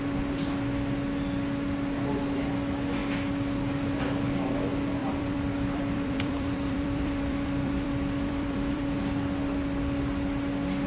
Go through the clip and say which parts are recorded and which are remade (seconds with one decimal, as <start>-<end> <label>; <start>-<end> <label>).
0.0-5.0 recorded; 5.0-8.9 remade; 8.9-10.9 recorded